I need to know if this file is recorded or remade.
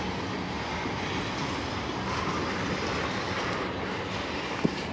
recorded